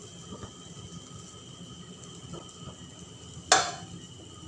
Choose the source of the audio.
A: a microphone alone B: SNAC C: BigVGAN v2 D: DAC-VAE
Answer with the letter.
A